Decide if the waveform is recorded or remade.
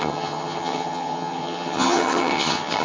remade